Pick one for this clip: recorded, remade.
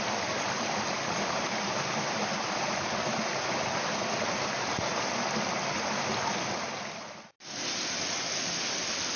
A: recorded